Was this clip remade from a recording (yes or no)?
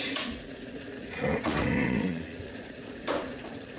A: yes